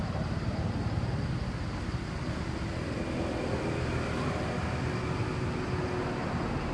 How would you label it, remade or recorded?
recorded